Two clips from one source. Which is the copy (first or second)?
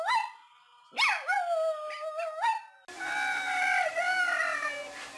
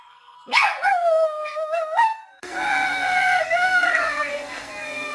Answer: second